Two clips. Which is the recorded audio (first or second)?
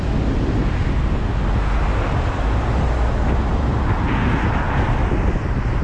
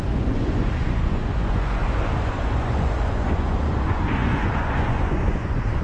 first